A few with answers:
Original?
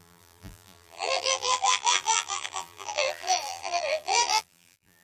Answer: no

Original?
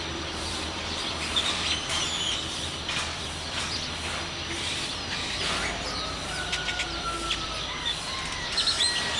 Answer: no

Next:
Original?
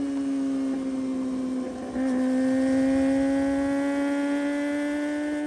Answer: yes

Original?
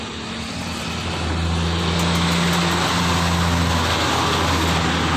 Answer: yes